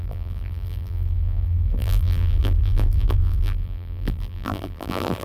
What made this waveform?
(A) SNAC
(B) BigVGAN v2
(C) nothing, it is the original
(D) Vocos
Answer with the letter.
B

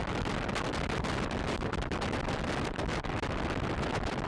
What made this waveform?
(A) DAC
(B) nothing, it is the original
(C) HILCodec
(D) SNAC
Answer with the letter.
B